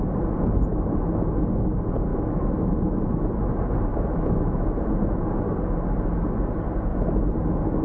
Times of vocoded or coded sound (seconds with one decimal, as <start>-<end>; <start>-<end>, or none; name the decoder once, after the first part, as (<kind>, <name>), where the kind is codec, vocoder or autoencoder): 2.1-3.0 (autoencoder, DAC-VAE); 3.9-4.9